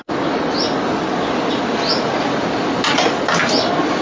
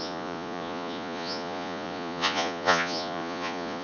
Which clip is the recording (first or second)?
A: first